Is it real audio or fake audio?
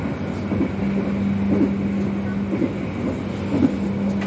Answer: real